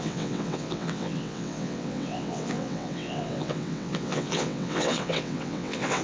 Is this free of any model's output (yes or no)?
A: no